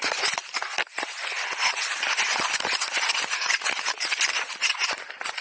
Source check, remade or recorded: recorded